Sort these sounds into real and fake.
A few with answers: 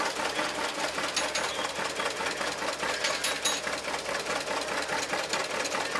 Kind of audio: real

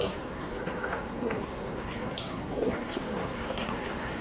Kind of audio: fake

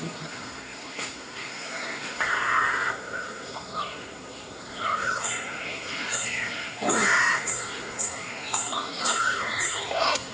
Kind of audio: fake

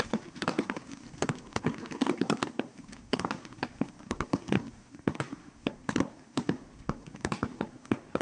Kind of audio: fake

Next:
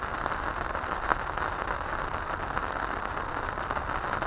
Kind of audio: real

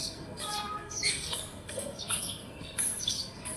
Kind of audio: fake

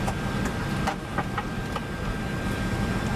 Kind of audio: real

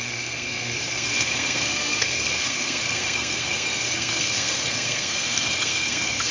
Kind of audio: fake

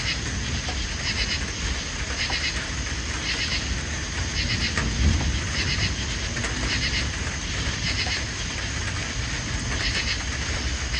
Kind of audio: real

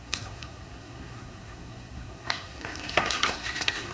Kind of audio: fake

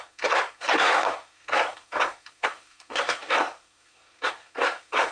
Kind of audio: fake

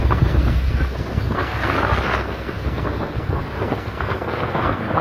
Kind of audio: fake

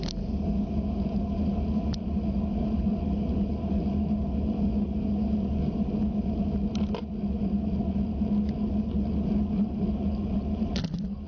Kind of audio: real